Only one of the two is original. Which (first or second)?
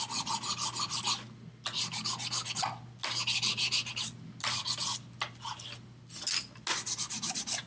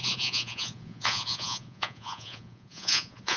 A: first